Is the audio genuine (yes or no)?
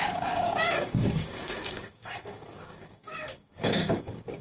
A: no